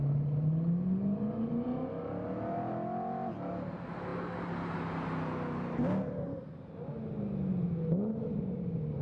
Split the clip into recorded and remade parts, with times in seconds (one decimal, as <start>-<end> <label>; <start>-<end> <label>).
0.0-9.0 recorded